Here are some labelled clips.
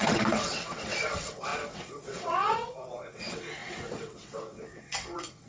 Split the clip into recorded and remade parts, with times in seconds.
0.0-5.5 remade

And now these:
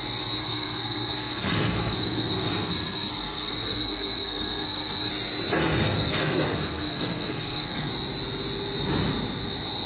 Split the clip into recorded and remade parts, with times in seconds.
0.0-0.4 recorded; 0.4-5.1 remade; 5.1-5.6 recorded; 5.6-7.9 remade; 7.9-9.9 recorded

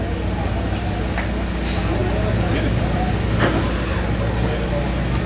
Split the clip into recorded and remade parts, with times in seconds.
0.0-0.4 recorded; 0.4-1.1 remade; 1.1-5.3 recorded